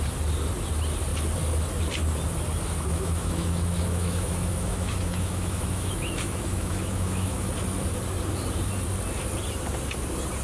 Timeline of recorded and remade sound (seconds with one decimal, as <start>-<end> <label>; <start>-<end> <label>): 0.0-2.9 recorded; 2.9-7.5 remade; 7.5-10.4 recorded